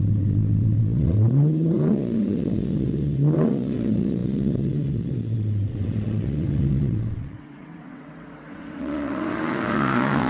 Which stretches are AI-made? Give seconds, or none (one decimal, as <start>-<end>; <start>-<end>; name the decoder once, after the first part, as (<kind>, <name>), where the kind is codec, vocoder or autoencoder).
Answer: 0.0-10.3 (vocoder, WaveNeXt)